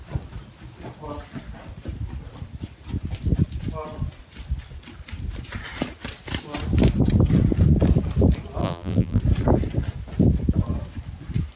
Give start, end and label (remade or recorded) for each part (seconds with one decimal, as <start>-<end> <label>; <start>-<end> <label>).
0.0-8.6 recorded; 8.6-9.2 remade; 9.2-11.6 recorded